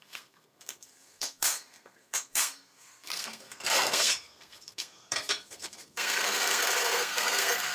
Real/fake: fake